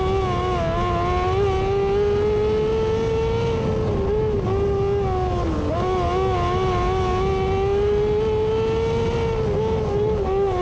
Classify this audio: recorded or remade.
recorded